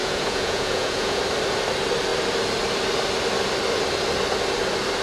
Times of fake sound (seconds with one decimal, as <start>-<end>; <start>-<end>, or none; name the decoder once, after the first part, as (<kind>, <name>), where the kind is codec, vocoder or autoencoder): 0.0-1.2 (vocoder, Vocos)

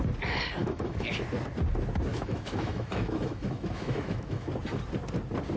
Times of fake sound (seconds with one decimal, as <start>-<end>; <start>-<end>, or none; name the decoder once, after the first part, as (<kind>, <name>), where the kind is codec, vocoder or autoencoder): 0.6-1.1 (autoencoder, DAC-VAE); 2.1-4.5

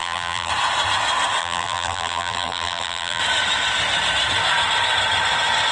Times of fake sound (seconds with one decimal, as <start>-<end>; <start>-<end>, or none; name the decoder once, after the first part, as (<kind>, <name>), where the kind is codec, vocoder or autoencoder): 0.0-0.5 (vocoder, BigVGAN v2); 1.4-3.2

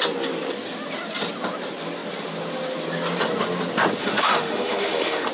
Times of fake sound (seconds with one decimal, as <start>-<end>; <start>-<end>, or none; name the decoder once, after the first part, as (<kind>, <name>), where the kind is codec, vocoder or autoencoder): 4.0-5.3 (autoencoder, DAC-VAE)